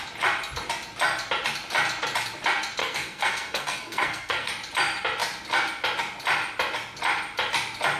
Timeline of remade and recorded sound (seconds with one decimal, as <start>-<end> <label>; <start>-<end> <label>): 0.0-2.8 recorded; 2.8-4.5 remade; 4.5-8.0 recorded